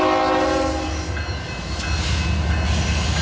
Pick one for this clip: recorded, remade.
recorded